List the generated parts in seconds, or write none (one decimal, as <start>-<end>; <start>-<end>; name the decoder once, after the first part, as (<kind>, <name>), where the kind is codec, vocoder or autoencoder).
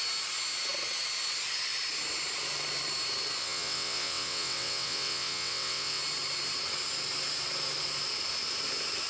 3.4-6.0 (vocoder, WaveNeXt)